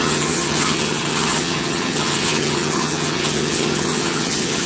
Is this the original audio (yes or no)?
no